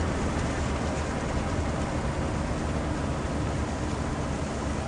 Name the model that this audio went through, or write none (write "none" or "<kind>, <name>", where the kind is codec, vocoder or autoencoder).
none